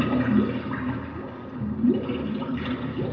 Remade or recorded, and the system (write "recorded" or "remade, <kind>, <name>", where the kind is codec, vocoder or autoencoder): recorded